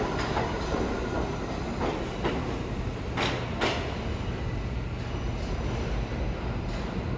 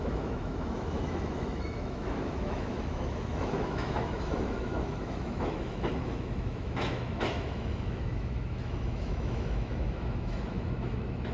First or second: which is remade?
second